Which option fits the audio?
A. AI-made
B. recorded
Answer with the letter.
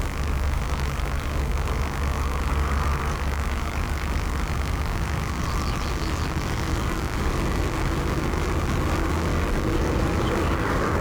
A